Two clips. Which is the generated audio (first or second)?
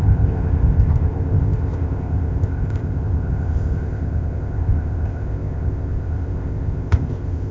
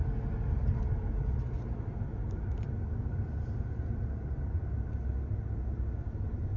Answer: first